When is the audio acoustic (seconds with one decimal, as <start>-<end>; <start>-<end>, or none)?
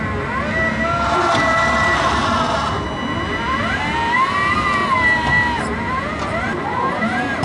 0.0-7.4